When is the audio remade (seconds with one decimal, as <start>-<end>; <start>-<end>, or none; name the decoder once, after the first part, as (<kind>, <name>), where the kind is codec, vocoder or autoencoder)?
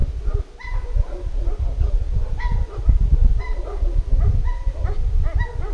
none